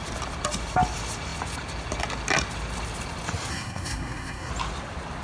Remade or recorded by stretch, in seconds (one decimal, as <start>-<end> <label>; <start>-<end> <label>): 0.0-3.5 recorded; 3.5-4.5 remade; 4.5-5.2 recorded

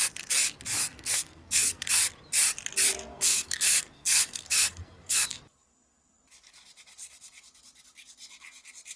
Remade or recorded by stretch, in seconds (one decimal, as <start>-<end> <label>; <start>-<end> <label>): 0.0-0.8 recorded; 0.8-1.9 remade; 1.9-3.1 recorded; 3.1-5.4 remade; 5.4-9.0 recorded

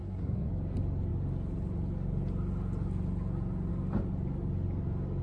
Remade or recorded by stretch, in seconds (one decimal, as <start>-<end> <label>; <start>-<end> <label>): 0.0-0.5 remade; 0.5-5.2 recorded

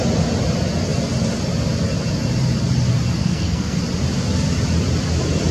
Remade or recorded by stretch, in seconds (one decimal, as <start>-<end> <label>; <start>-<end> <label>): 0.0-3.2 recorded; 3.2-3.8 remade; 3.8-5.5 recorded

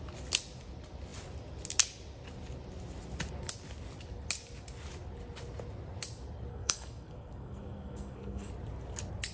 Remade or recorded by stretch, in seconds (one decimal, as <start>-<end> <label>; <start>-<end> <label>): 0.0-6.5 recorded; 6.5-8.5 remade; 8.5-9.3 recorded

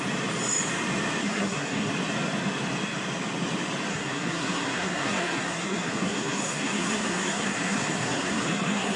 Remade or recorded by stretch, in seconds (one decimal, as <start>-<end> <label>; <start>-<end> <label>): 0.0-1.2 recorded; 1.2-1.9 remade; 1.9-3.9 recorded; 3.9-9.0 remade